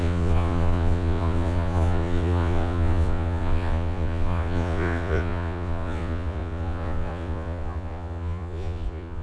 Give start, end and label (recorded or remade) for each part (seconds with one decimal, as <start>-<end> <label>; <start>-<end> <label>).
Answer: 0.0-9.2 remade